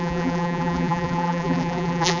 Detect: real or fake fake